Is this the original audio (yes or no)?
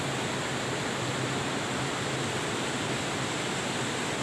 yes